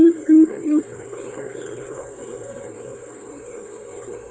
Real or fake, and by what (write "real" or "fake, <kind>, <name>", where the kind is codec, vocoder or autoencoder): fake, codec, SNAC